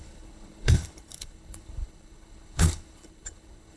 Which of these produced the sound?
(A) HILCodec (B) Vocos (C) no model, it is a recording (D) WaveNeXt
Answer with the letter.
A